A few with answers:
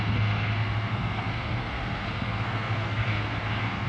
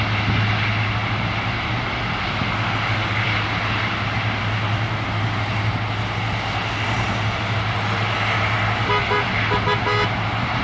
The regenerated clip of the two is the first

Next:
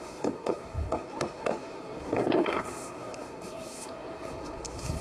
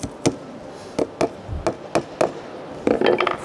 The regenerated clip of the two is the first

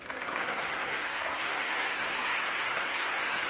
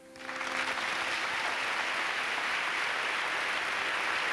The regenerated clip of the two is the first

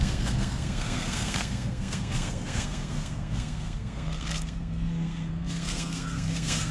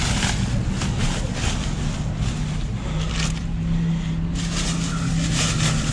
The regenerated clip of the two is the first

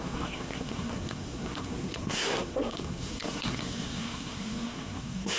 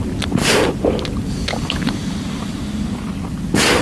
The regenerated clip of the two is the first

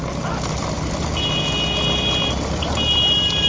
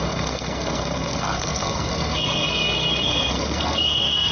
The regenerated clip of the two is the second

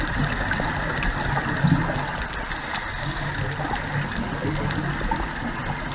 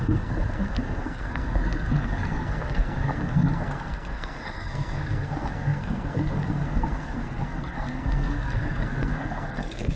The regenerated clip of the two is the second